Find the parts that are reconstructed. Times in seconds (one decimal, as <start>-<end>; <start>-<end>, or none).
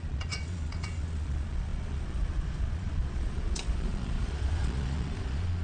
0.0-5.6